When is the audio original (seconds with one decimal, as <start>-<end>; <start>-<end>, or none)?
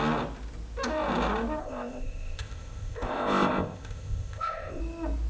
0.0-1.6; 4.8-5.3